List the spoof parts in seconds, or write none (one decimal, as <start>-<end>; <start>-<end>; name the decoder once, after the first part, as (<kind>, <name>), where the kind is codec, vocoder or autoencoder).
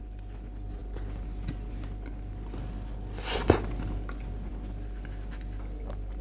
none